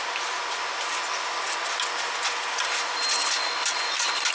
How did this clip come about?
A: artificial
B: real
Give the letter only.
B